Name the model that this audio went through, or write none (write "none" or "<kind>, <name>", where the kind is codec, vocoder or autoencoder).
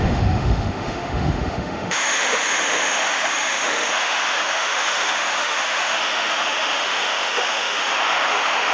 autoencoder, DAC-VAE